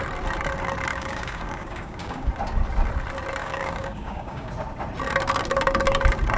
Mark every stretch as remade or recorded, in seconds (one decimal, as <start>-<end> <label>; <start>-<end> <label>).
0.0-0.9 recorded; 0.9-2.3 remade; 2.3-3.4 recorded; 3.4-4.5 remade; 4.5-6.4 recorded